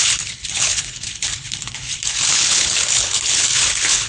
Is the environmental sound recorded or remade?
remade